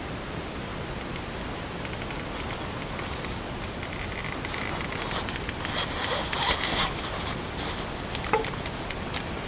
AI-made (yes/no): no